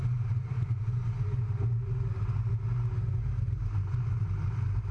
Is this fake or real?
real